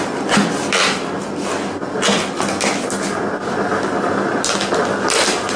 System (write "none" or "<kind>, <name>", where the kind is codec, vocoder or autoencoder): none